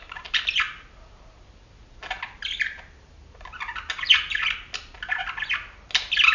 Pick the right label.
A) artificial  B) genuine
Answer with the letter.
B